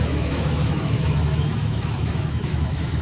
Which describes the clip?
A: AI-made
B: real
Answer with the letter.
A